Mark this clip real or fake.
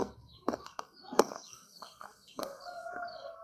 fake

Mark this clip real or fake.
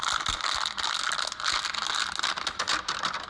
real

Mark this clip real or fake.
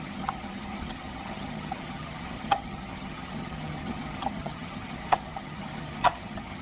fake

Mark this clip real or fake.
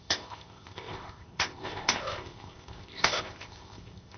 fake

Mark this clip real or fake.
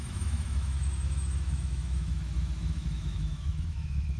fake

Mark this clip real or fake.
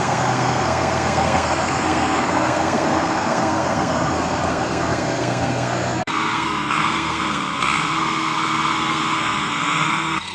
fake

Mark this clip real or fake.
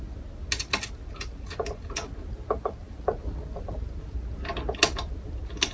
real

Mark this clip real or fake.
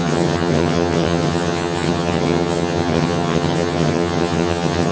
fake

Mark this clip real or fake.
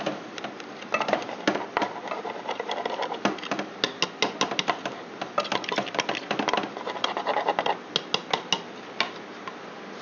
real